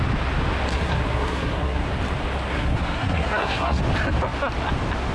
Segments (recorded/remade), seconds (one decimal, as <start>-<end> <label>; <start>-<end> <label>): 0.0-0.7 recorded; 0.7-1.9 remade; 1.9-2.5 recorded; 2.5-3.8 remade; 3.8-5.1 recorded